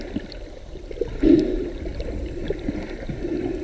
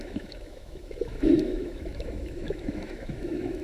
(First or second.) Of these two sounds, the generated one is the second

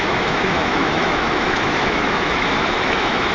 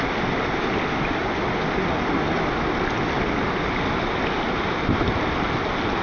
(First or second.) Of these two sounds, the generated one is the first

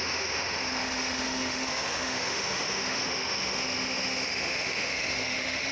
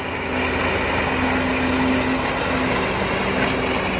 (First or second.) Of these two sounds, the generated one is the first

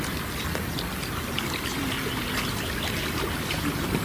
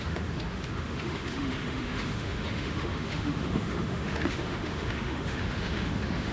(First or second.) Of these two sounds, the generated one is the second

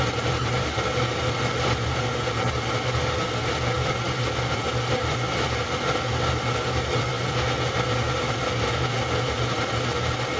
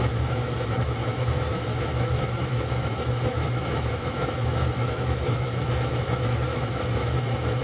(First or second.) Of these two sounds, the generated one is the second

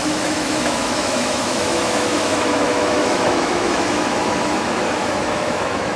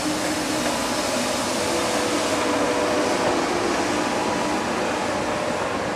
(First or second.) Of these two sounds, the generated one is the first